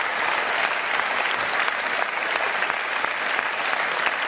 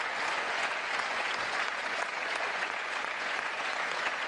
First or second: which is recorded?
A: first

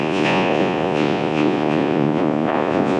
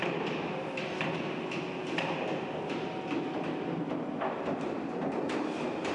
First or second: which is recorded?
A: second